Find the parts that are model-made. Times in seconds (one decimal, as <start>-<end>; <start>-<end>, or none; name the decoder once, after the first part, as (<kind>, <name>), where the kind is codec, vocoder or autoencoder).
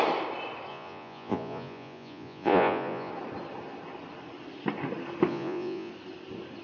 0.7-3.1 (vocoder, Vocos); 5.3-5.9